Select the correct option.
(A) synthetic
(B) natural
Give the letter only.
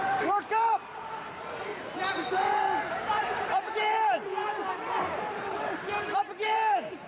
A